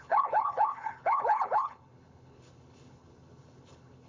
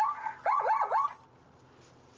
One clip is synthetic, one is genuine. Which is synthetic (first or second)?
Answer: first